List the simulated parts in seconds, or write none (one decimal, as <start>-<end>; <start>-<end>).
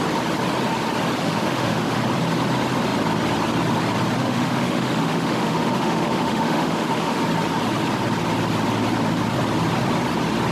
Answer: 1.2-2.0; 4.2-7.2